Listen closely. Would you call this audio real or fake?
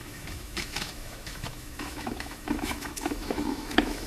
fake